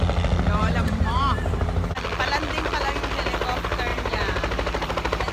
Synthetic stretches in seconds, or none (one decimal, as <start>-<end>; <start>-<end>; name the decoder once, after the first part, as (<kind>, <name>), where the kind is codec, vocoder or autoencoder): 0.6-1.9 (vocoder, BigVGAN v2); 3.9-5.3